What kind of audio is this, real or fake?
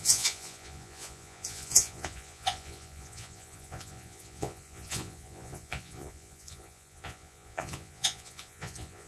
fake